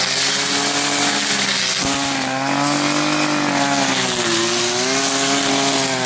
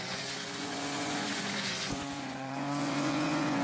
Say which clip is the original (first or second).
first